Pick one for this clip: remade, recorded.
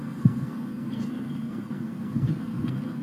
remade